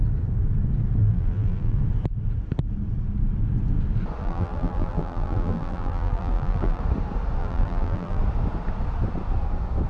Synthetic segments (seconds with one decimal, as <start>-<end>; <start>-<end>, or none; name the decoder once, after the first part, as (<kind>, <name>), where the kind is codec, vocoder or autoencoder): 1.0-1.8 (vocoder, BigVGAN v2); 4.2-6.8; 7.4-8.2